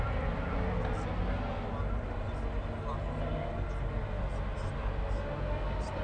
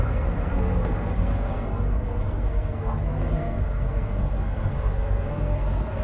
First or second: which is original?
first